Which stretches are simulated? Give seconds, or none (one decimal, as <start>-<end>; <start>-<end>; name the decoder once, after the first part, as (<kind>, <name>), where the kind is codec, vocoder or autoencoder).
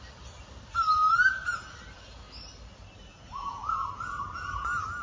3.1-3.9 (vocoder, Vocos)